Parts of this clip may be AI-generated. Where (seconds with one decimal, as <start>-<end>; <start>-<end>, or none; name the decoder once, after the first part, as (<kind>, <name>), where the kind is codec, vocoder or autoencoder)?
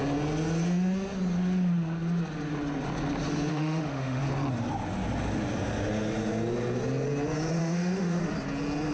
3.5-4.2 (autoencoder, DAC-VAE); 7.6-8.2